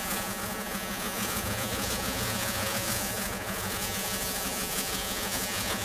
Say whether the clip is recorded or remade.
remade